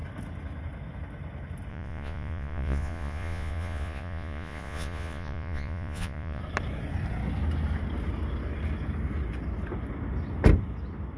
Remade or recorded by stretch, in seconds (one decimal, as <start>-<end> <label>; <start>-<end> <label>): 0.0-1.7 recorded; 1.7-6.4 remade; 6.4-11.2 recorded